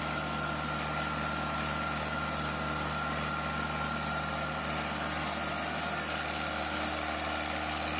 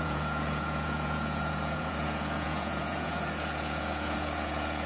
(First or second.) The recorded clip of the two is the first